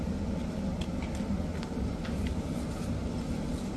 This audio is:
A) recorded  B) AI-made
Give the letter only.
A